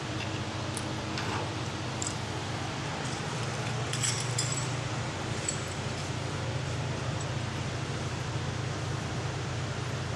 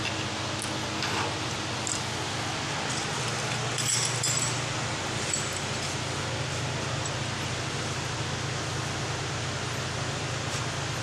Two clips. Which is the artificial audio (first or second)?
first